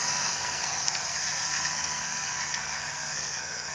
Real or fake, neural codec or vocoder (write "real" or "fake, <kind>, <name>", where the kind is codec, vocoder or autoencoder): fake, codec, SNAC